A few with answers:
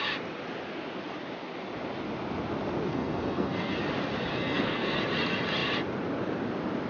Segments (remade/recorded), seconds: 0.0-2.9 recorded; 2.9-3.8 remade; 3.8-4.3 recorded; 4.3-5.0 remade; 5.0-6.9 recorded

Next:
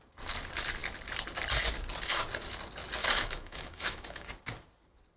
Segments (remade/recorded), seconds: 0.0-3.0 recorded; 3.0-4.3 remade; 4.3-5.2 recorded

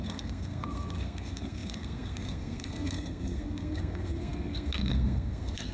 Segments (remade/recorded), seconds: 0.0-5.7 remade

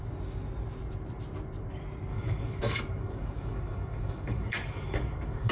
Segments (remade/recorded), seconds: 0.0-2.1 recorded; 2.1-5.5 remade

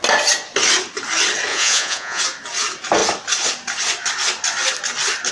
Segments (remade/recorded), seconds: 0.0-1.5 recorded; 1.5-2.2 remade; 2.2-5.3 recorded